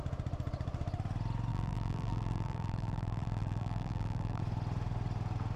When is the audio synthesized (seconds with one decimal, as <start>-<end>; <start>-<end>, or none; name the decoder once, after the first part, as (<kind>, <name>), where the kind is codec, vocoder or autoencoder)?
1.5-4.4 (vocoder, BigVGAN v2)